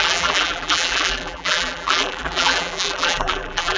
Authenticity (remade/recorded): remade